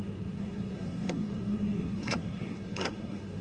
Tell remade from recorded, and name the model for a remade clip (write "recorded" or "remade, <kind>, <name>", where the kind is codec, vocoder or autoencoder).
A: remade, codec, SNAC